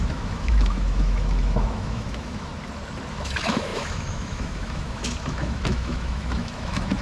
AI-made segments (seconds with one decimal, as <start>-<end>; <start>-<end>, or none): 0.0-2.5; 3.1-7.0